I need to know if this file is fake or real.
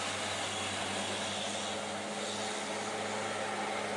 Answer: real